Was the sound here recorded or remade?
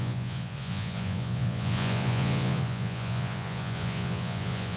remade